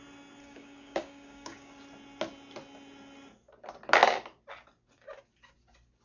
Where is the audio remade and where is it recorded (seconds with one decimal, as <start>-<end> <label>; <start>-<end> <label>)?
0.0-0.4 recorded; 0.4-1.8 remade; 1.8-6.0 recorded

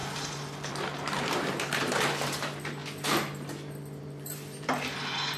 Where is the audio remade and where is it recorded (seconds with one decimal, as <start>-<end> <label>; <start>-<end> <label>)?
0.0-2.8 remade; 2.8-4.0 recorded; 4.0-5.4 remade

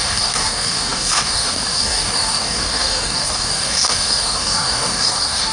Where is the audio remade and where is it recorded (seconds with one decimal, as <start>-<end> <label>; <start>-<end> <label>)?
0.0-5.5 remade

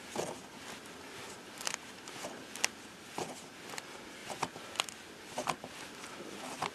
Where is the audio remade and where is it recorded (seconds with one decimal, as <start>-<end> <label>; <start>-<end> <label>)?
0.0-6.7 recorded

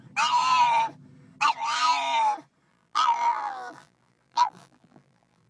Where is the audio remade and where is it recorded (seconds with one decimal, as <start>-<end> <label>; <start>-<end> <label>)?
0.0-2.7 recorded; 2.7-5.5 remade